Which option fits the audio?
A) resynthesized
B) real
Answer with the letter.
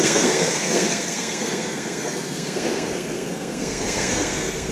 A